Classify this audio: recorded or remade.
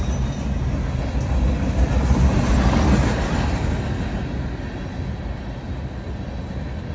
recorded